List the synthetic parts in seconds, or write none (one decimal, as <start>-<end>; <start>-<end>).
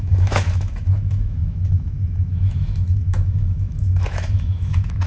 0.0-5.1